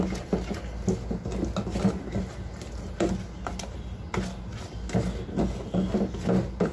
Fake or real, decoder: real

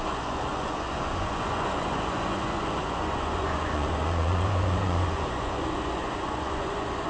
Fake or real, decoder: fake, vocoder, Vocos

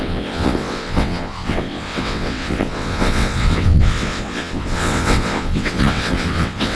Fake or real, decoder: fake, vocoder, WaveNeXt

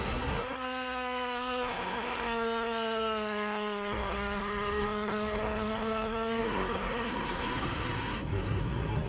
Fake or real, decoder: fake, codec, SNAC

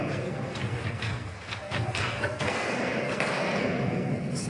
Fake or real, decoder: fake, codec, SNAC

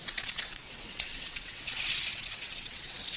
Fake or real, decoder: fake, vocoder, WaveNeXt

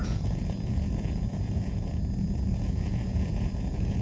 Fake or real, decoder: fake, vocoder, Vocos